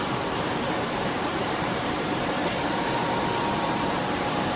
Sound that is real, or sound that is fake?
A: fake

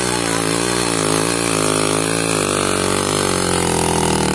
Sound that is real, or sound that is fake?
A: real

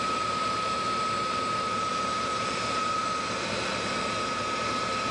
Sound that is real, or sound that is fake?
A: fake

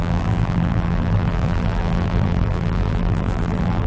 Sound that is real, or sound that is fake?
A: fake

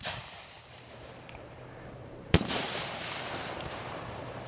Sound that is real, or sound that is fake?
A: fake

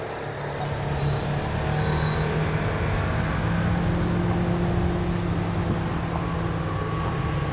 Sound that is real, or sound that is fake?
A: real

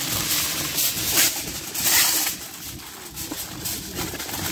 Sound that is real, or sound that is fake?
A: real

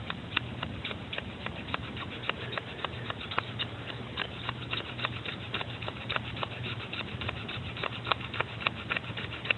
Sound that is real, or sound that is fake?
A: fake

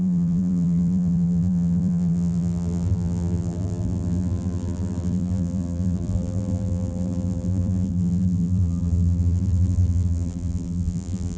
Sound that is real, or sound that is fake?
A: fake